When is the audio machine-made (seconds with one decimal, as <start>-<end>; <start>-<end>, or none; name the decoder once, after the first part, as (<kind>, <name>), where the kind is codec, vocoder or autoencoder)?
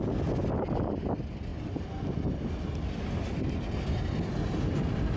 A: none